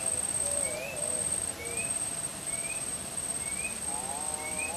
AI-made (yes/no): no